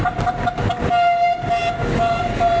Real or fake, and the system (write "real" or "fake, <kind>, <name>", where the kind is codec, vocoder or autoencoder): real